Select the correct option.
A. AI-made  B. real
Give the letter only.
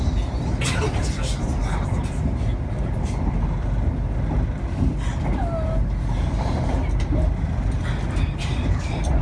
B